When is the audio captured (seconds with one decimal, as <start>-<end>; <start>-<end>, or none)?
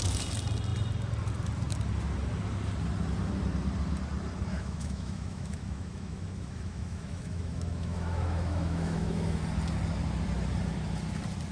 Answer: 0.0-4.5; 9.4-11.5